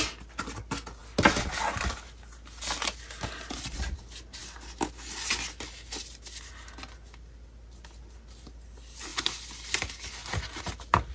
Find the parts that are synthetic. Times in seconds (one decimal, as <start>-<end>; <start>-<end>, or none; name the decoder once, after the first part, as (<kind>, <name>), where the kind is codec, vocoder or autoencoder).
none